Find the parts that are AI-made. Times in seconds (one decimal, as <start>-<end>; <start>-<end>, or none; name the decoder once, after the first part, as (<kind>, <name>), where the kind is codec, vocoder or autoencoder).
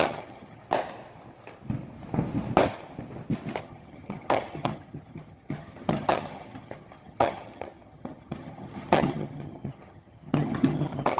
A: 0.0-0.6 (vocoder, HiFi-GAN); 3.6-11.2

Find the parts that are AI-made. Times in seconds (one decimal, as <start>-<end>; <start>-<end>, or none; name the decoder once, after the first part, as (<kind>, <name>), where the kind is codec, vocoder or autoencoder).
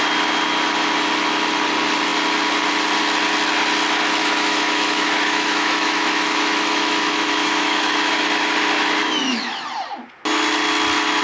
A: 4.2-8.1 (autoencoder, DAC-VAE); 9.0-9.6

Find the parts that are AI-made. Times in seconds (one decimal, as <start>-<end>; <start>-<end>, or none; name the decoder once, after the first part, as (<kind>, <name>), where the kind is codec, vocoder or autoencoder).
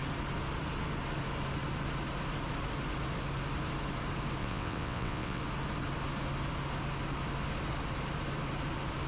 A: 4.4-5.4 (vocoder, WaveNeXt)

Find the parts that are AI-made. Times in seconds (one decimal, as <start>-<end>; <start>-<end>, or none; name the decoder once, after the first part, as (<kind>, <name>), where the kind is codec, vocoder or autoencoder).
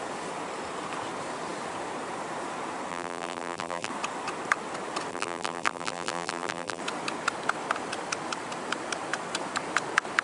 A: 2.9-3.9 (vocoder, BigVGAN v2); 5.1-6.8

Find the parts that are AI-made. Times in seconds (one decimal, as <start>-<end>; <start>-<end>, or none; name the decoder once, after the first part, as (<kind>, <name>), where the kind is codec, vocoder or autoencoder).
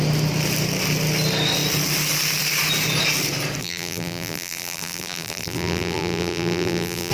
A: 3.6-7.1 (vocoder, BigVGAN v2)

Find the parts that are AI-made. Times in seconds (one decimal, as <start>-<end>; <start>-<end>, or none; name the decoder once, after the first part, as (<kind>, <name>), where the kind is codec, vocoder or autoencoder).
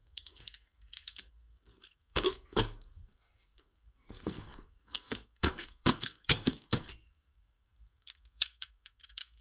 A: 0.0-9.4 (codec, SNAC)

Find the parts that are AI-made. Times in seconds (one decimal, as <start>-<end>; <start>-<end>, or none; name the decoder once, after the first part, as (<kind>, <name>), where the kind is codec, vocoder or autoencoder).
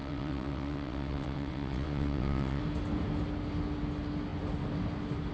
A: 0.0-2.6 (vocoder, WaveNeXt)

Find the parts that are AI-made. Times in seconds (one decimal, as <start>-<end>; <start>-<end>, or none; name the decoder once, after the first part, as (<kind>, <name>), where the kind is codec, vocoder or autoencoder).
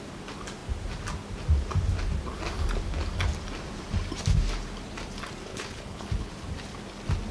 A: 5.5-6.3 (codec, HILCodec)